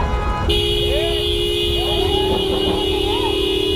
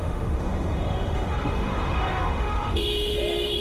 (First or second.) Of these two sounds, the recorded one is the first